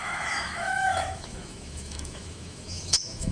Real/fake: fake